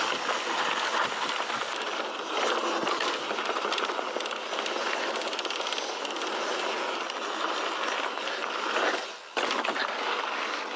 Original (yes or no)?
yes